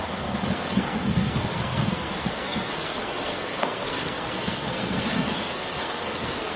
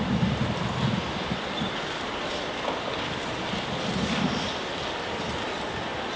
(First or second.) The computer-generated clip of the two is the first